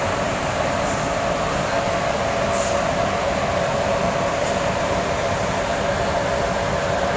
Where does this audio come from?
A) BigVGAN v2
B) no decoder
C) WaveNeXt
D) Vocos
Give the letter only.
A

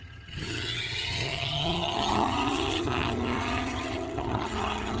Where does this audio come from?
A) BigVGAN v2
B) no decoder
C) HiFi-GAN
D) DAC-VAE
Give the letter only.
C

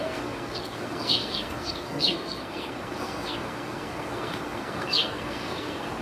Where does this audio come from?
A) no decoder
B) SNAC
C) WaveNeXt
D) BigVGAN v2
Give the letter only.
B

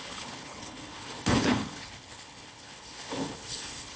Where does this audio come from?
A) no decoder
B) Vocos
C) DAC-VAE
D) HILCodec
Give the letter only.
D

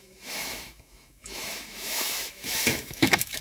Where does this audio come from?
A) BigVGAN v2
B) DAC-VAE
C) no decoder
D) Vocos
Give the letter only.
B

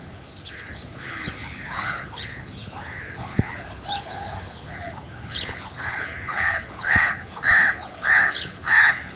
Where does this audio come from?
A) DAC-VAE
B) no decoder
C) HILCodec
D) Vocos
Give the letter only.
C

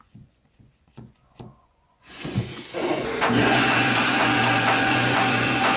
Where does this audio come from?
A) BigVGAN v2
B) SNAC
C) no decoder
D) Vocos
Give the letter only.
D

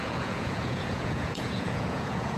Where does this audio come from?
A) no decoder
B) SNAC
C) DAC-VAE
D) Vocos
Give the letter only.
D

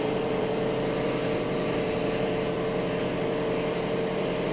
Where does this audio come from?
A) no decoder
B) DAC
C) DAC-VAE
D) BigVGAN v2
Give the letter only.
D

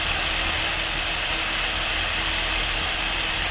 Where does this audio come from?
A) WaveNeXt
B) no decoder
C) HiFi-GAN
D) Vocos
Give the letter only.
B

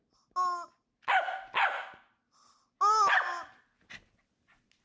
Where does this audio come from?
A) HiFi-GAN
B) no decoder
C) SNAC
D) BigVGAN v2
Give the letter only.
B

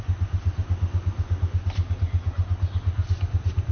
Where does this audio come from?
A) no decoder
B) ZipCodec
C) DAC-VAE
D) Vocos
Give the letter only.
A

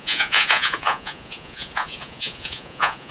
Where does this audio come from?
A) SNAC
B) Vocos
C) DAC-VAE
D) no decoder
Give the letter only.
B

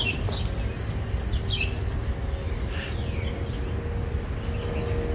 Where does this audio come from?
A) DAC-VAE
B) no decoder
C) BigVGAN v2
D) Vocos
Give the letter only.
B